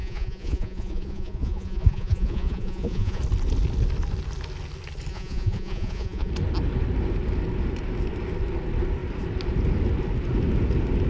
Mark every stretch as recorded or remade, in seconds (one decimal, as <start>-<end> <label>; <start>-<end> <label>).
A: 0.0-3.2 remade; 3.2-5.1 recorded; 5.1-6.3 remade; 6.3-11.1 recorded